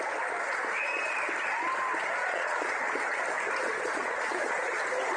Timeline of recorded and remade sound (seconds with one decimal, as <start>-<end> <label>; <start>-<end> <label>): 0.0-2.2 recorded; 2.2-3.2 remade; 3.2-3.6 recorded; 3.6-4.8 remade; 4.8-5.2 recorded